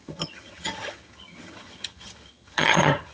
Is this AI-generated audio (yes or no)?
yes